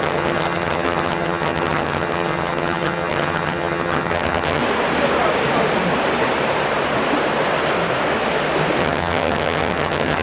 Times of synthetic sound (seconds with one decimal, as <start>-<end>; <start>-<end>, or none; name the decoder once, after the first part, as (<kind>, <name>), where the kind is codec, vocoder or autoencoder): 0.0-4.6 (vocoder, HiFi-GAN); 8.8-10.2